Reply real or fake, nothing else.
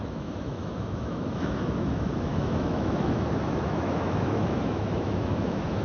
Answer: fake